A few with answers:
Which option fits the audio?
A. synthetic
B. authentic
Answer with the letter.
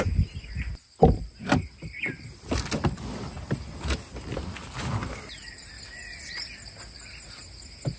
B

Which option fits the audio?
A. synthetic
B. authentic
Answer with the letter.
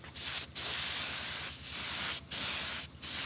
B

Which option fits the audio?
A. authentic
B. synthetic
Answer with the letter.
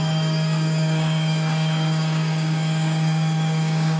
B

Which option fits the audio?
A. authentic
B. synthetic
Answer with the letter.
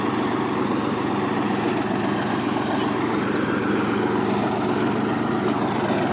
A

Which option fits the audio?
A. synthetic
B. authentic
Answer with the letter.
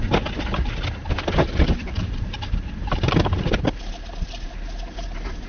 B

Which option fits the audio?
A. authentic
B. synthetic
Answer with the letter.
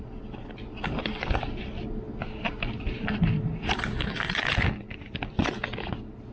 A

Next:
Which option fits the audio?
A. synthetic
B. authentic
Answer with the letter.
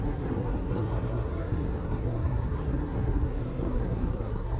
A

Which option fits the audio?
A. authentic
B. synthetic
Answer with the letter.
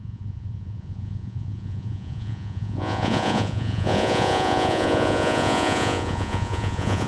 B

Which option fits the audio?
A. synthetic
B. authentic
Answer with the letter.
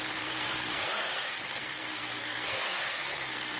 A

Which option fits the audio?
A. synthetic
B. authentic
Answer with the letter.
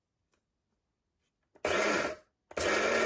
B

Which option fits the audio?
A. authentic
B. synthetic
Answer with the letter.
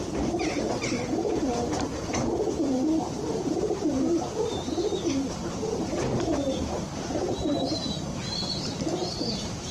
B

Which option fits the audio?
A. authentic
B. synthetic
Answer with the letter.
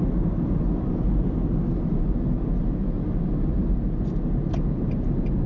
A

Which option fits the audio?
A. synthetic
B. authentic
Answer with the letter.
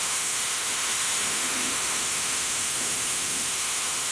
A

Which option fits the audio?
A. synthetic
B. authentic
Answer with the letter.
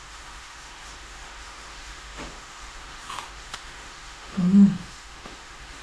A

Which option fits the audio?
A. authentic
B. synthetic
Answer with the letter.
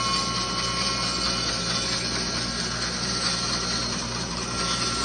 A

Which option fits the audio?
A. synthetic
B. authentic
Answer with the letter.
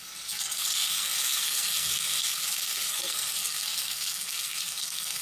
A